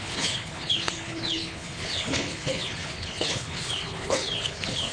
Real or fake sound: fake